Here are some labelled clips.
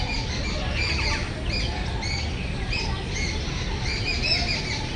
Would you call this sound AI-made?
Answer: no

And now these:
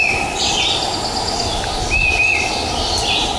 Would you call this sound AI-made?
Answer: no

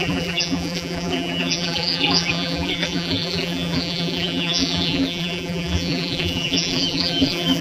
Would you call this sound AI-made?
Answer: yes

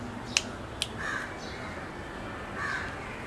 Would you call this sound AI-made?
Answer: no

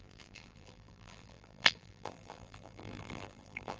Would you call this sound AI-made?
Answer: yes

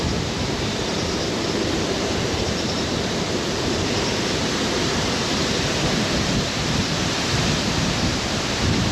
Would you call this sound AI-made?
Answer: yes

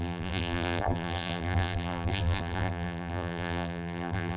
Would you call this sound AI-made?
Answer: yes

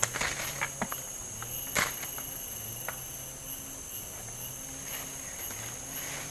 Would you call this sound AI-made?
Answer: no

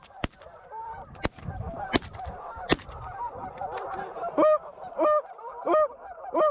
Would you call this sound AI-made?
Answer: yes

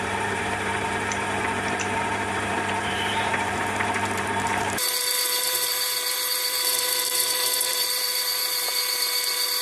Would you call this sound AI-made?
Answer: yes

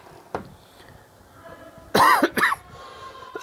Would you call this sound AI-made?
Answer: no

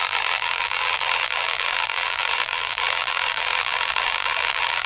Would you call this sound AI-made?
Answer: yes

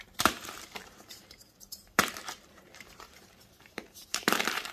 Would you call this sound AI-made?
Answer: yes